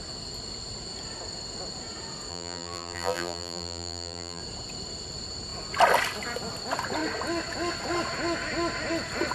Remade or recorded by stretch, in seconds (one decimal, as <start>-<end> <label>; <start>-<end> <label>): 0.0-2.3 recorded; 2.3-4.4 remade; 4.4-9.3 recorded